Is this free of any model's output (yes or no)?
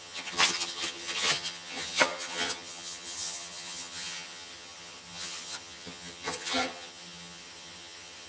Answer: no